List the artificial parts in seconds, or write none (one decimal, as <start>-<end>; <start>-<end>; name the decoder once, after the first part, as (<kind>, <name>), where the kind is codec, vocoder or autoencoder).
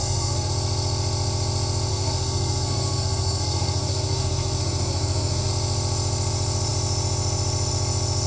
0.0-0.5 (codec, SNAC); 1.9-5.5